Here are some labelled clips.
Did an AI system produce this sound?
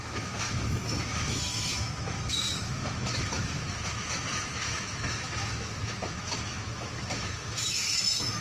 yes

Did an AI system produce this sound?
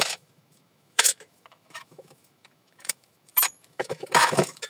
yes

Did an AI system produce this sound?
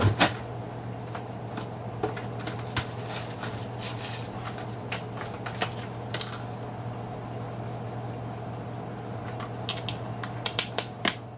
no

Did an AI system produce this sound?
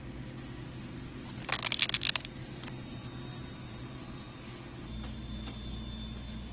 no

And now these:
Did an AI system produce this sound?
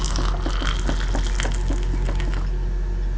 no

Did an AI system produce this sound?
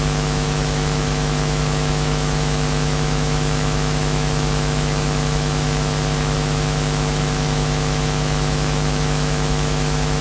yes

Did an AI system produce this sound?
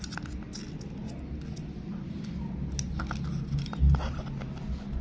no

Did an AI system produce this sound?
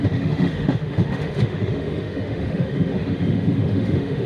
yes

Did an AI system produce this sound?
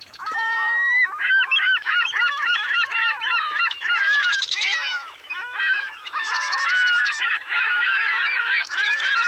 yes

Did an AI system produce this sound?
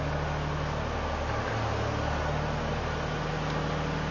no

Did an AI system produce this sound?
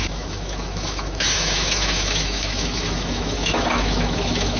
yes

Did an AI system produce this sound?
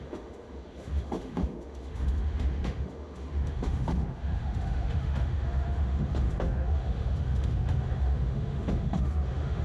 yes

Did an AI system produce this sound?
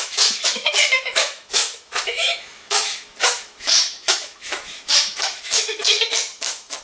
yes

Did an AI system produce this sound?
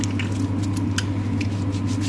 no